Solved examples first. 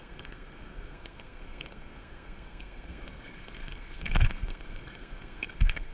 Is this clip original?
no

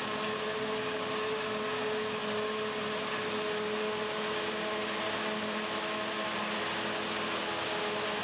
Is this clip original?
yes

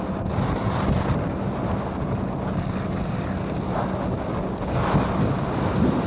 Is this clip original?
yes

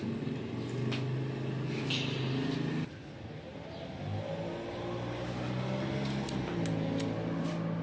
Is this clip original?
yes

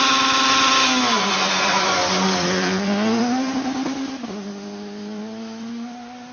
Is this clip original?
yes